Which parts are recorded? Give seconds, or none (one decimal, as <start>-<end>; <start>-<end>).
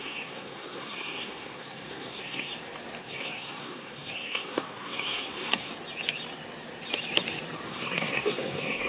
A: 2.5-3.0; 5.7-7.7